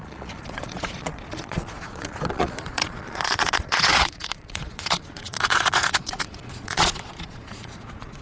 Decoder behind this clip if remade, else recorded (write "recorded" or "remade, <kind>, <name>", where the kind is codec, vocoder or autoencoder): remade, vocoder, Vocos